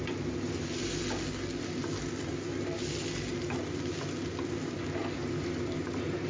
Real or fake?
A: real